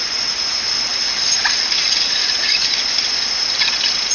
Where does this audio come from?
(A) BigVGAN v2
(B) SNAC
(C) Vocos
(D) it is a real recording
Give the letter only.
D